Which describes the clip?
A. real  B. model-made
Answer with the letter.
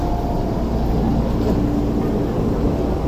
A